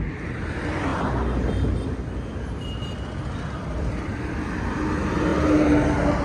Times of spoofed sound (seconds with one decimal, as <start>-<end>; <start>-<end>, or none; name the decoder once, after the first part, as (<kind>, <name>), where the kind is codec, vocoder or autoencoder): none